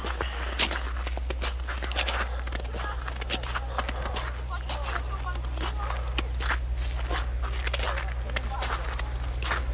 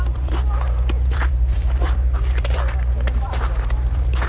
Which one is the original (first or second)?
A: first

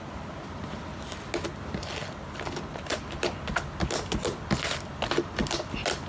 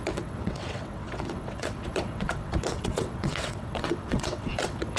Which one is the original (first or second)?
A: first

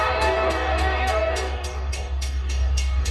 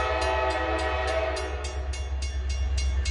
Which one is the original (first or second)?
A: second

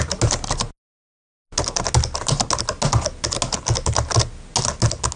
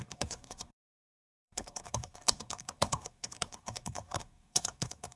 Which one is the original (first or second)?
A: first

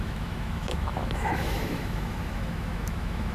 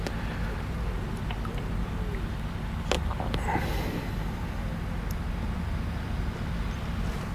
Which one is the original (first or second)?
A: second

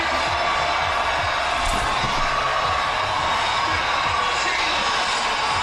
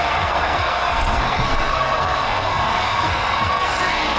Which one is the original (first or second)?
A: first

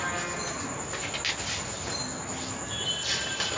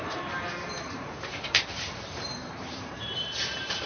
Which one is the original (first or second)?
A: first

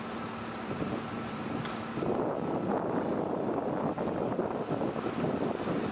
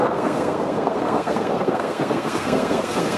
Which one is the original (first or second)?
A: first